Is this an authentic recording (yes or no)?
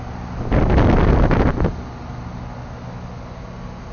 yes